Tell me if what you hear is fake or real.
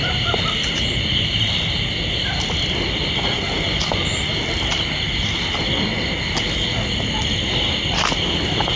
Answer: real